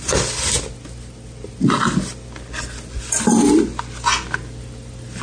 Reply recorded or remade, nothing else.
recorded